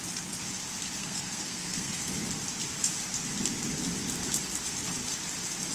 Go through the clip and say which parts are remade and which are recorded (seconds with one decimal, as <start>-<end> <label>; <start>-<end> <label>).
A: 0.0-1.0 recorded; 1.0-2.1 remade; 2.1-5.7 recorded